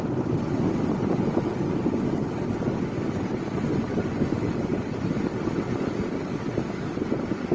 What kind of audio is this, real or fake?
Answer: real